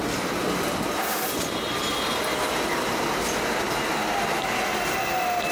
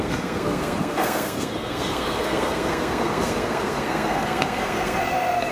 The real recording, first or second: first